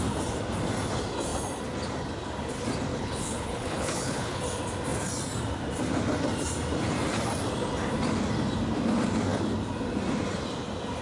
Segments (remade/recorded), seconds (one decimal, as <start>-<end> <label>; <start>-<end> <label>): 0.0-2.9 recorded; 2.9-4.4 remade; 4.4-11.0 recorded